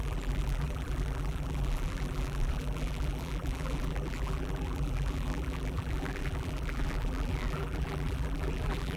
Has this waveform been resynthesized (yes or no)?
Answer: yes